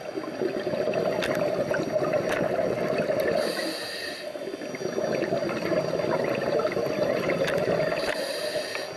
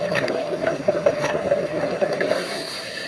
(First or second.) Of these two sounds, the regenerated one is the second